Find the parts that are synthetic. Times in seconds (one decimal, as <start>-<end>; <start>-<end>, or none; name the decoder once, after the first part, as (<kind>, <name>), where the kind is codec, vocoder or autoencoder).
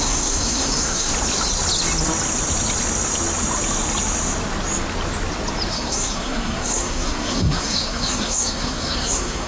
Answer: 0.0-1.1 (codec, SNAC); 5.7-9.5